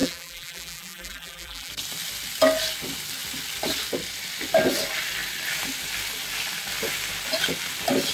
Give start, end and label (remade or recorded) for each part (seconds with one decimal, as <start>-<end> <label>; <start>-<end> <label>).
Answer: 0.0-1.7 remade; 1.7-8.1 recorded